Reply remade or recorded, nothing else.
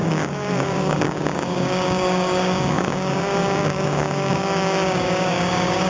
remade